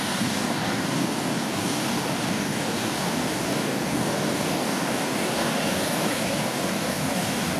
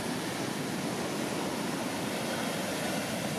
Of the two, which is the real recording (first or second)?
second